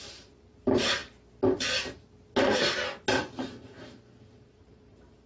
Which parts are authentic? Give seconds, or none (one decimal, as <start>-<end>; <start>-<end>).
1.0-4.2